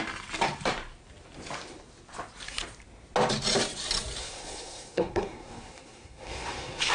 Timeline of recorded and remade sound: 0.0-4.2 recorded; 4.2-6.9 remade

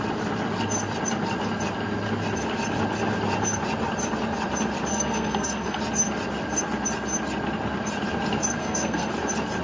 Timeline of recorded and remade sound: 0.0-4.9 recorded; 4.9-5.8 remade; 5.8-8.6 recorded; 8.6-9.1 remade; 9.1-9.6 recorded

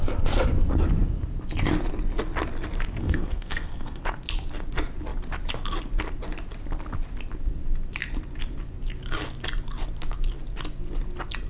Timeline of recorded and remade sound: 0.0-3.0 recorded; 3.0-4.0 remade; 4.0-11.5 recorded

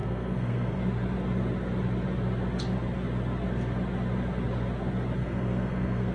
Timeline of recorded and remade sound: 0.0-0.8 remade; 0.8-5.2 recorded; 5.2-6.1 remade

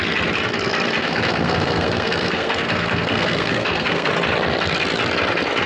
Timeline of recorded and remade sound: 0.0-1.0 recorded; 1.0-4.1 remade; 4.1-5.7 recorded

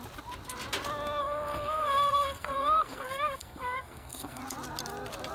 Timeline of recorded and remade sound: 0.0-1.2 recorded; 1.2-4.4 remade; 4.4-5.3 recorded

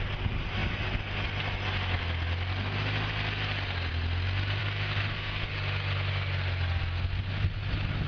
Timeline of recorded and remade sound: 0.0-4.6 recorded; 4.6-5.5 remade; 5.5-8.1 recorded

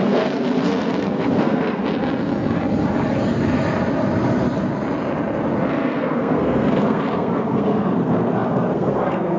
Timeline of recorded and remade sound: 0.0-1.8 remade; 1.8-5.7 recorded; 5.7-9.4 remade